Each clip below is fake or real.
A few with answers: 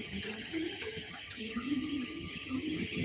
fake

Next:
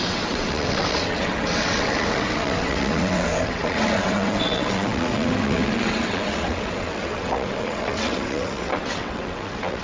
fake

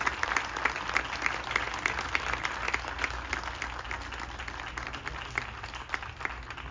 real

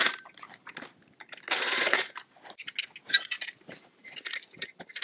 real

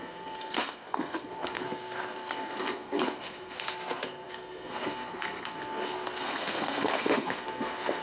fake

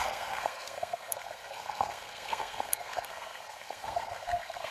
fake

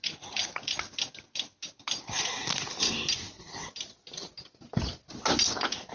real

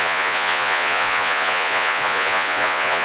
fake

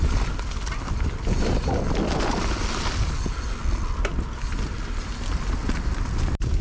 real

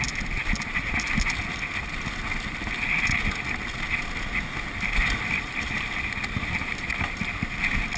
real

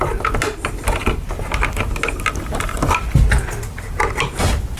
real